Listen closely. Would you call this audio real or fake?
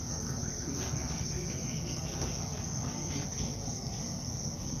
fake